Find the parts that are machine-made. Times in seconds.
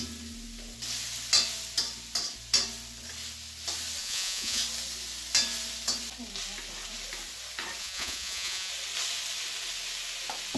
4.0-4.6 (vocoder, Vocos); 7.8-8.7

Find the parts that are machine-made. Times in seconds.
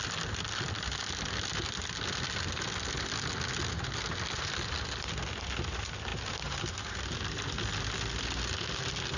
none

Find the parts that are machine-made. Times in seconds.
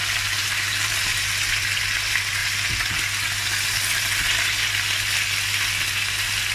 0.4-0.9 (vocoder, BigVGAN v2)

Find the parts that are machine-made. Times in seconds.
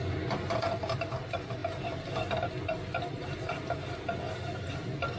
none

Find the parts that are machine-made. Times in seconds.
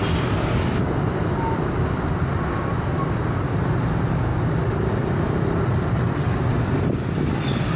none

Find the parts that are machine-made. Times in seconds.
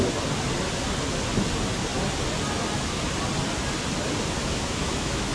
4.4-5.3 (autoencoder, DAC-VAE)